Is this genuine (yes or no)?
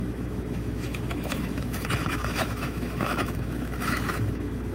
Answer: no